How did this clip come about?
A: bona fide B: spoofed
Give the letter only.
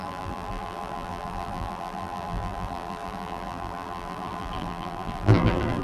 B